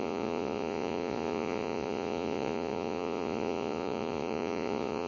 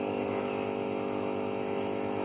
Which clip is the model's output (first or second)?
first